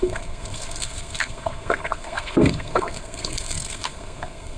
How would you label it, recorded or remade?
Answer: remade